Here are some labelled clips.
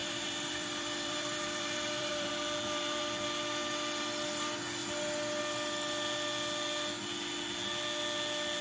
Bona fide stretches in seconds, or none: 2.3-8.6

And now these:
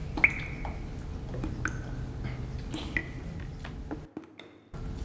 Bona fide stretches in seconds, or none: 0.0-5.0

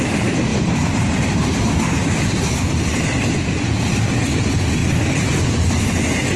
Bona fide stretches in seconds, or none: 0.0-0.5; 4.3-6.4

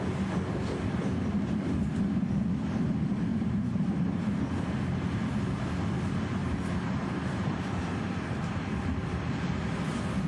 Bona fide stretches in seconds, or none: 0.0-3.3; 4.2-6.4; 8.4-10.3